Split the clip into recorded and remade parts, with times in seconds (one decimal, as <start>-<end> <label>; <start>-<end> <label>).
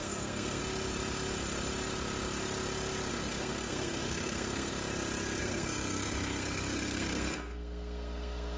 0.0-0.6 remade; 0.6-3.1 recorded; 3.1-4.7 remade; 4.7-5.4 recorded; 5.4-8.6 remade